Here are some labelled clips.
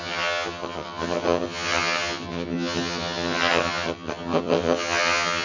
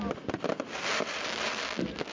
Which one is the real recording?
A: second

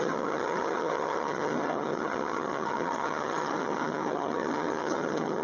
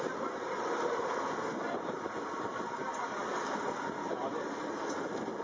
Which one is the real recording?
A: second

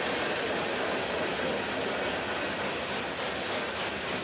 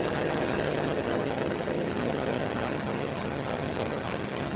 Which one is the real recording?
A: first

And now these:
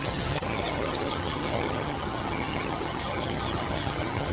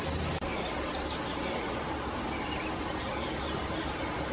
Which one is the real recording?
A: second